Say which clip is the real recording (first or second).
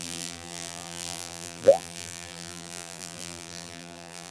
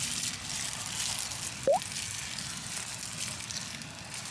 second